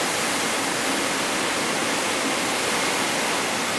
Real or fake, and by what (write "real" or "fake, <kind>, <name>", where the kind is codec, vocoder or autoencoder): real